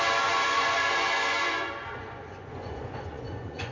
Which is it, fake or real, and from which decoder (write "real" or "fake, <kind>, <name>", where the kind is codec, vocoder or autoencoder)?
fake, vocoder, Vocos